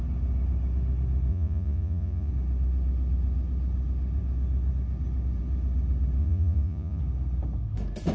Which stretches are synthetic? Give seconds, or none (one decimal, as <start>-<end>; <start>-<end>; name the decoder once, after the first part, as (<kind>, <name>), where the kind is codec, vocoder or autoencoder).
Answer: 1.3-2.3 (vocoder, Vocos); 6.2-7.0